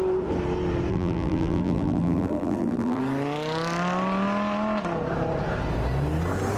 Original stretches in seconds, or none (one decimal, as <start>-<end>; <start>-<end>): 0.0-0.9; 3.0-6.6